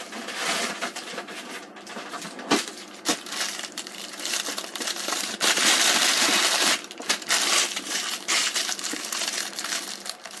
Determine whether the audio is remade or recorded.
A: remade